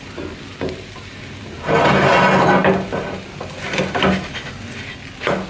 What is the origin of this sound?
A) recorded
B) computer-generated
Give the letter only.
A